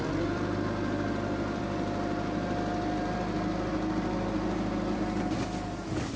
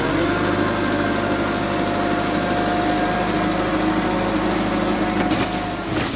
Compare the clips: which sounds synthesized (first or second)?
first